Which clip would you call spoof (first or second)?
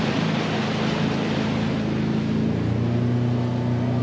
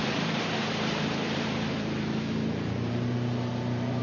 second